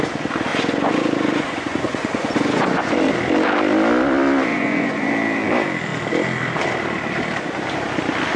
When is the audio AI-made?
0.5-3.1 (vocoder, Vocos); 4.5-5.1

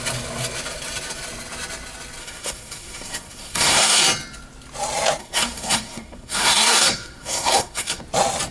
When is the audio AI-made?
2.2-4.0 (codec, SNAC); 5.2-8.0

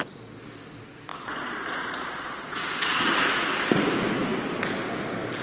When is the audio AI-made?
1.1-3.1 (vocoder, Vocos)

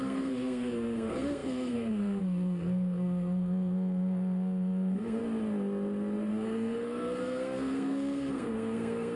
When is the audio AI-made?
0.0-5.2 (codec, SNAC); 6.3-9.2

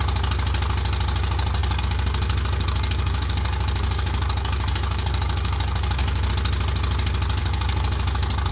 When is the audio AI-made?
1.6-6.3 (codec, DAC); 7.4-8.5